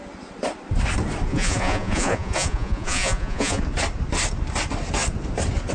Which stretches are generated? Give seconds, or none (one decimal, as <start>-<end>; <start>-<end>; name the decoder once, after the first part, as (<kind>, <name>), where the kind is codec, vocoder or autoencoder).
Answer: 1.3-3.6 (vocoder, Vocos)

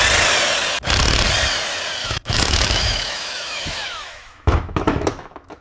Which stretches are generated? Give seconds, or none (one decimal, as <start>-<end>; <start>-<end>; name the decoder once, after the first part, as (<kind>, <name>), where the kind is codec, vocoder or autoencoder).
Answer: 2.0-5.6 (autoencoder, DAC-VAE)

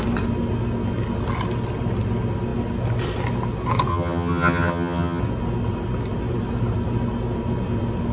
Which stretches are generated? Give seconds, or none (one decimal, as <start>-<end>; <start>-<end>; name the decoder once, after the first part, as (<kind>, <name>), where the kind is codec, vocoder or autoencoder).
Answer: 3.9-5.2 (vocoder, HiFi-GAN)